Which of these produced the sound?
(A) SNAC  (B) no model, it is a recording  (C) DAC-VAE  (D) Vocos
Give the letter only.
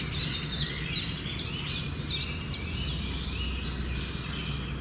B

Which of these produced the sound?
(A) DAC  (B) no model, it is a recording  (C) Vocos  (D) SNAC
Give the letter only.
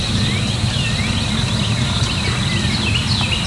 B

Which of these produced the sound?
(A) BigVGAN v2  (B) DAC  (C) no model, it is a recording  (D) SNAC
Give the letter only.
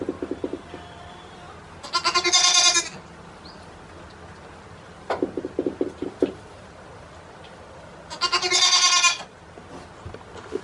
C